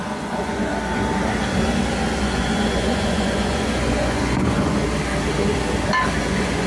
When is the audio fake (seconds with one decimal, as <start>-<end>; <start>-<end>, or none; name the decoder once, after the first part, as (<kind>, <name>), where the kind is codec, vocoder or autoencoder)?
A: 0.0-0.7 (vocoder, Vocos); 2.2-4.8; 6.2-6.7